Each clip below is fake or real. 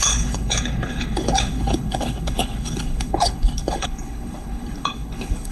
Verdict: fake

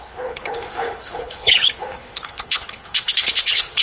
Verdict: fake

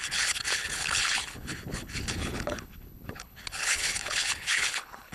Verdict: fake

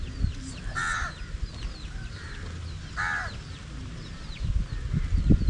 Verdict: real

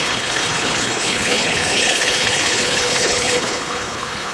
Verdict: fake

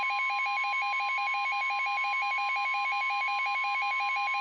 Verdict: real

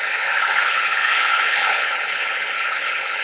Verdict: fake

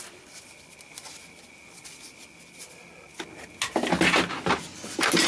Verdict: real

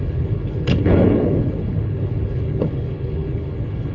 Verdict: fake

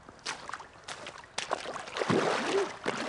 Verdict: real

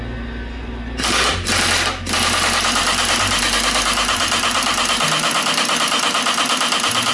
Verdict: real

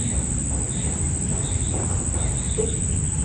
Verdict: real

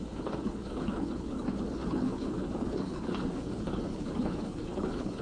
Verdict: fake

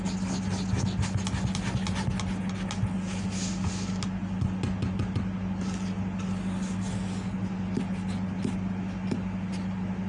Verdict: real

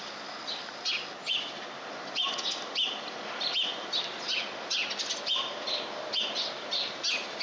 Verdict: real